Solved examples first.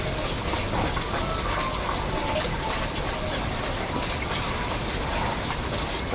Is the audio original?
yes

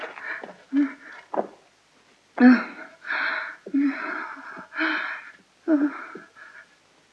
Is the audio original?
yes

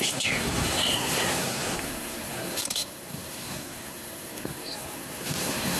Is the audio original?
no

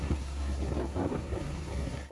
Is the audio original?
no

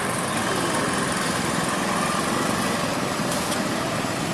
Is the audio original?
yes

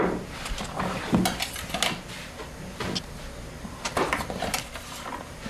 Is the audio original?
yes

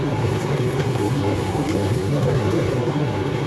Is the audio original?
no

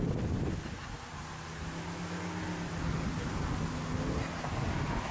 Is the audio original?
yes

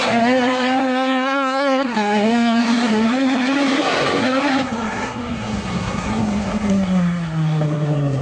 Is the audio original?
no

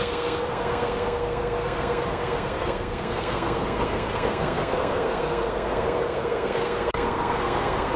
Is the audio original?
no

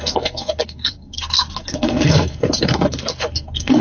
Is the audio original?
no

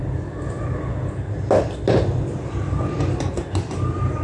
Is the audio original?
yes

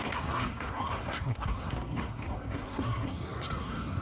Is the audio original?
no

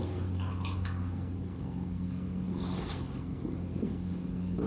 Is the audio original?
no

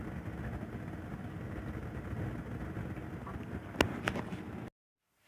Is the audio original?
yes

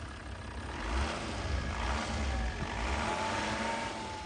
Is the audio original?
yes